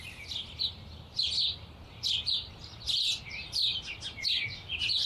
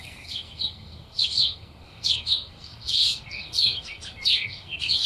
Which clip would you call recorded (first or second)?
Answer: first